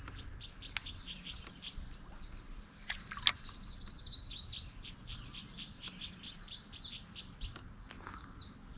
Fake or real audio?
real